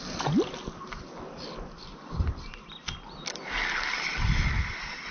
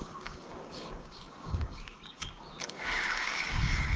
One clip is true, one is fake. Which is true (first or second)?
first